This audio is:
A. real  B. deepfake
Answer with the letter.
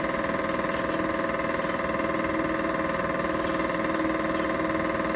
A